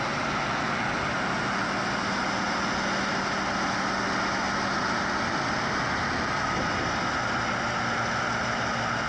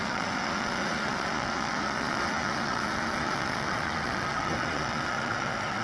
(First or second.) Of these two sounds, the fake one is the second